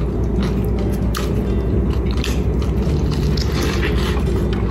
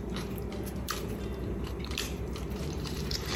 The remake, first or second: second